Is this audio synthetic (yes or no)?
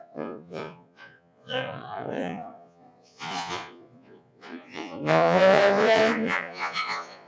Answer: yes